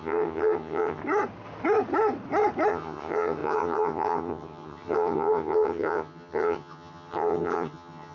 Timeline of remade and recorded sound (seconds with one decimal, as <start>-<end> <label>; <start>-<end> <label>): 0.0-1.0 remade; 1.0-2.7 recorded; 2.7-8.1 remade